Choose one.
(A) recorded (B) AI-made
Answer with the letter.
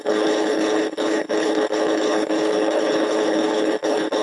B